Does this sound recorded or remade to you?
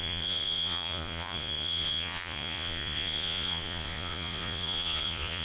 remade